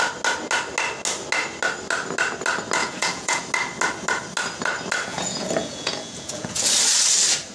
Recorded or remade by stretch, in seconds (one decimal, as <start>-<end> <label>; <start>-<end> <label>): 0.0-2.8 recorded; 2.8-3.4 remade; 3.4-5.1 recorded; 5.1-6.7 remade; 6.7-7.5 recorded